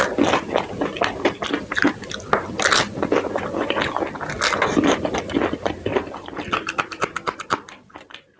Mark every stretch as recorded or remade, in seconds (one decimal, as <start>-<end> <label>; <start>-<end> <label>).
0.0-8.4 recorded